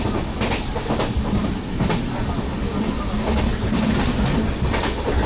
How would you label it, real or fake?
real